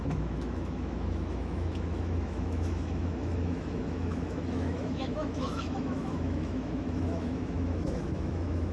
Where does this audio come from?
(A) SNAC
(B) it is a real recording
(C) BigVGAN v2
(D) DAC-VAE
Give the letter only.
D